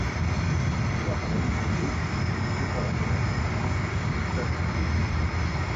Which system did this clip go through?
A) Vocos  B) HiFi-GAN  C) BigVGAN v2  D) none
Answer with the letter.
D